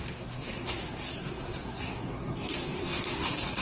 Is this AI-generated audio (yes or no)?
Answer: yes